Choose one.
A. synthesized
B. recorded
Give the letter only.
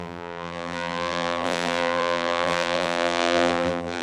A